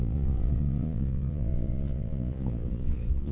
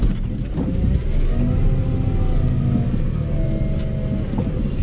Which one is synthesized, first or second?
first